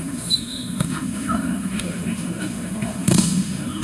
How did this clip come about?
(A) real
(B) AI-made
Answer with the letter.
B